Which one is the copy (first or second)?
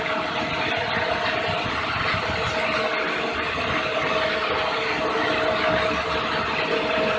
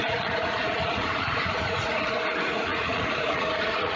second